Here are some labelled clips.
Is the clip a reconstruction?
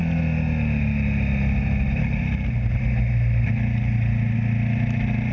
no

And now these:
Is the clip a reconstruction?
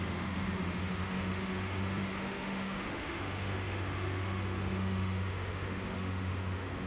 yes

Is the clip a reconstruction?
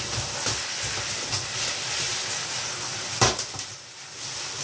no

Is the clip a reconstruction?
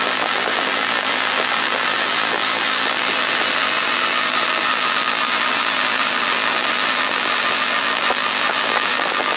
yes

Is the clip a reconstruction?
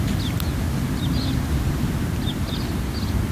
no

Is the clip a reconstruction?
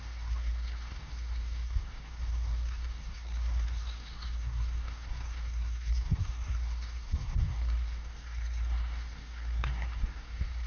yes